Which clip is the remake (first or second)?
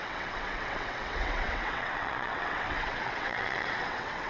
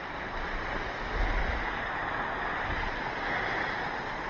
first